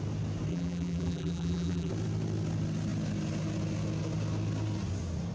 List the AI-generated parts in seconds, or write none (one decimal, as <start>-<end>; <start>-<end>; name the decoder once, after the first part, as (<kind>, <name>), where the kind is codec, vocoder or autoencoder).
0.5-1.9 (vocoder, BigVGAN v2)